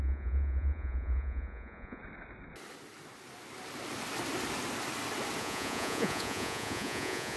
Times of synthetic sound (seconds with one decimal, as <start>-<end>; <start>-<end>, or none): 0.0-2.0; 5.4-7.4